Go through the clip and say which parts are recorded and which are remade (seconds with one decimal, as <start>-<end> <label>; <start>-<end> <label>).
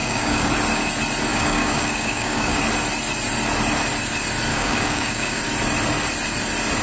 0.0-0.5 remade; 0.5-1.3 recorded; 1.3-2.6 remade; 2.6-4.5 recorded; 4.5-5.4 remade; 5.4-6.8 recorded